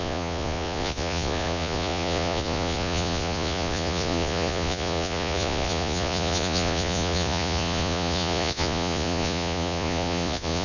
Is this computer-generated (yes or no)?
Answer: yes